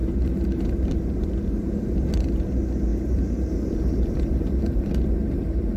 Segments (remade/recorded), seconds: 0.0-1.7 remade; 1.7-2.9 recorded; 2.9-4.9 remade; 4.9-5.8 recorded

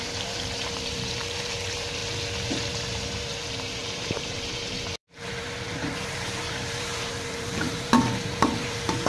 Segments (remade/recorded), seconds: 0.0-2.0 remade; 2.0-2.5 recorded; 2.5-9.1 remade